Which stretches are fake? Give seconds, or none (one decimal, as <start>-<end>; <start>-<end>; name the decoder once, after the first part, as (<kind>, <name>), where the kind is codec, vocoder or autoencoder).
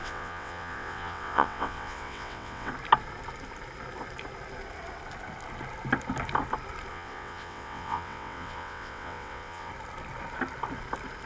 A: 0.0-2.7 (vocoder, WaveNeXt); 6.9-9.7